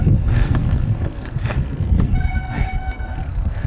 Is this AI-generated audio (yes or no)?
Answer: yes